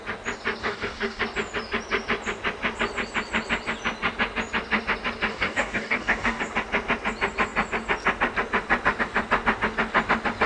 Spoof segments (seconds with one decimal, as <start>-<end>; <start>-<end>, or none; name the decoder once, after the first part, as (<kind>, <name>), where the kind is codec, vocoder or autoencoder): 0.6-1.2 (codec, DAC); 5.3-6.4